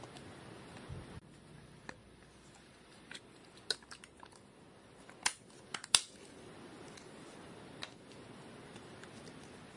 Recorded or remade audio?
recorded